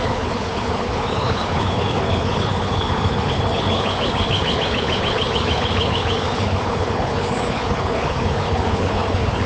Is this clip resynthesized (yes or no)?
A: yes